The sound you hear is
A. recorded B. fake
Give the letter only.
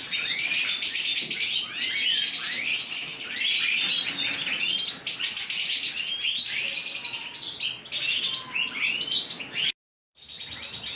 A